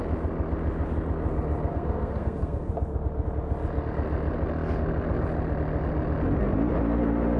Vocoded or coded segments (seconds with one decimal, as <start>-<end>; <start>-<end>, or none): 1.7-2.7